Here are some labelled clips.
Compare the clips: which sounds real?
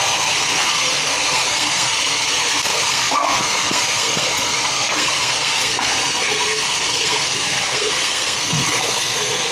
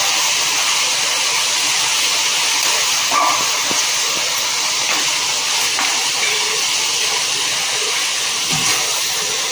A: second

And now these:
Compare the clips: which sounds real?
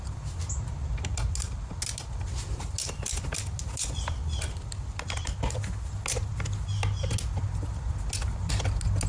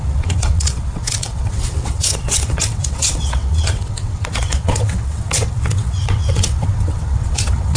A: first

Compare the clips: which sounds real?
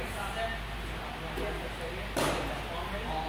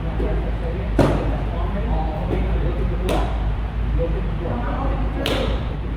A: first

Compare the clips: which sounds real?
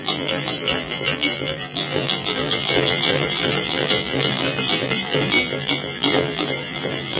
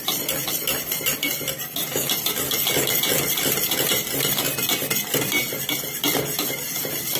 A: second